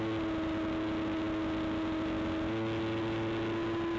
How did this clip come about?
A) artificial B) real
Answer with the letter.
B